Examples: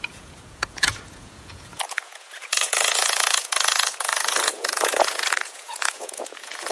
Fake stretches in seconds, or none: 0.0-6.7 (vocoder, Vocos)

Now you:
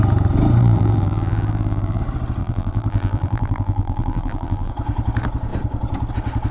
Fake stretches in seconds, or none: 0.6-2.0 (vocoder, BigVGAN v2); 2.4-4.7

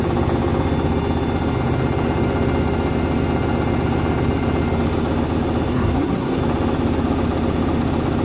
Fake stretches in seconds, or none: 5.7-6.4 (codec, SNAC)

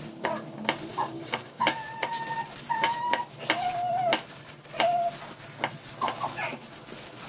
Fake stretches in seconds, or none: 0.9-1.6 (codec, DAC)

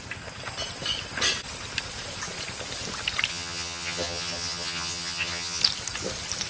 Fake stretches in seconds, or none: 3.3-5.6 (vocoder, HiFi-GAN)

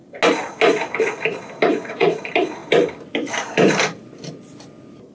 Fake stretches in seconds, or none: 1.7-2.2 (vocoder, WaveNeXt)

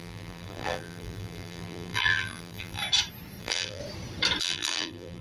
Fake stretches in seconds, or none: 0.0-2.8 (vocoder, BigVGAN v2); 3.4-3.8; 4.4-5.2

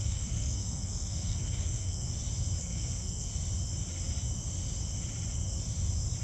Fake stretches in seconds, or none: 0.0-2.1 (codec, SNAC); 2.6-3.3